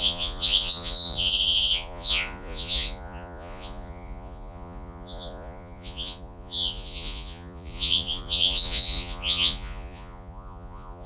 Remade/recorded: remade